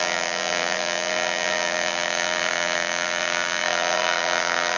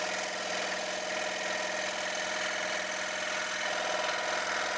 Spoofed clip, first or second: first